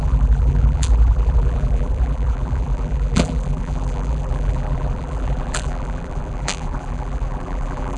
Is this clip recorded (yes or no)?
no